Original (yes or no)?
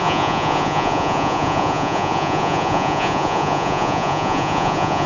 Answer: no